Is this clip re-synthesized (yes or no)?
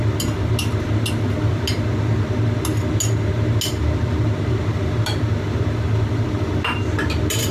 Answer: no